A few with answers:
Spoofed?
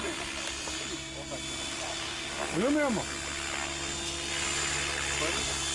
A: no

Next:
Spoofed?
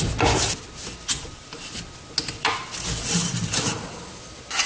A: no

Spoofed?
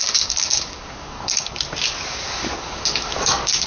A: yes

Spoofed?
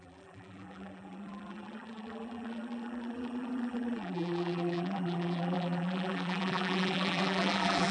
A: yes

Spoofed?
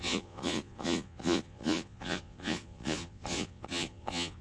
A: yes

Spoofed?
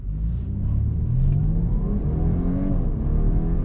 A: no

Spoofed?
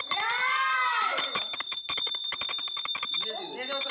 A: no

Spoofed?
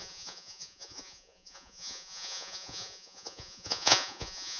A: yes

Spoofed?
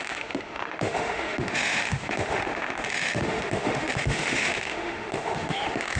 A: yes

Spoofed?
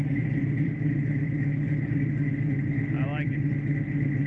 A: yes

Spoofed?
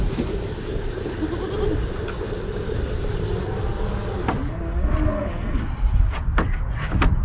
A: no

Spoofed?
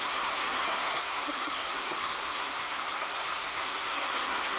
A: yes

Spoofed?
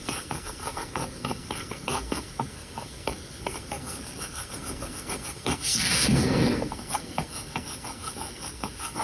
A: yes